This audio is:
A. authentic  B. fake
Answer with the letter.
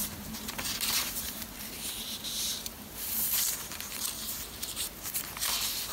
B